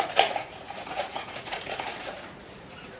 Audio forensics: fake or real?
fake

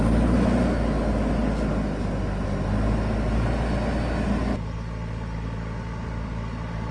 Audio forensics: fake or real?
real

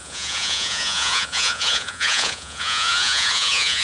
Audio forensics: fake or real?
fake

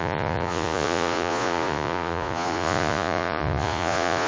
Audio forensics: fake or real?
fake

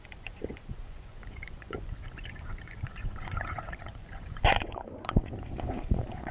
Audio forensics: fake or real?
fake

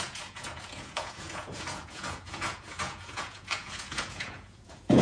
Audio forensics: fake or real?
fake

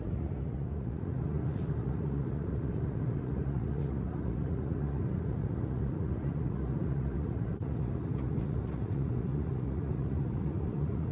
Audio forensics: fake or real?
fake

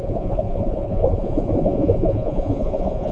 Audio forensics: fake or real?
fake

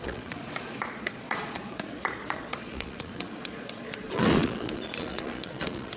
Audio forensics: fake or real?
fake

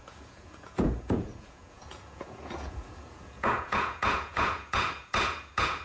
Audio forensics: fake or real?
fake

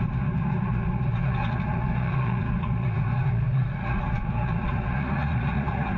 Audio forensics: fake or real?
fake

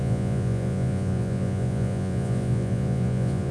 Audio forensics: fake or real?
fake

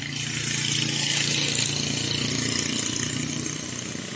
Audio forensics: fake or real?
real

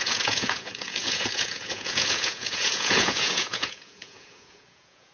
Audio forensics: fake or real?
fake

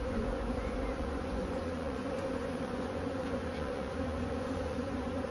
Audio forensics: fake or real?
fake